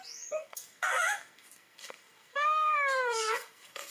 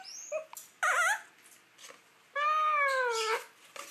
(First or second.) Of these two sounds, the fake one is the first